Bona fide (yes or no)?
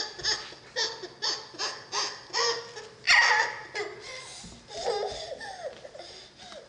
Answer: yes